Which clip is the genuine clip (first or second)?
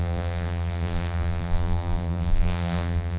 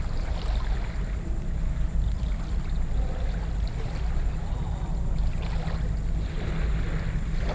second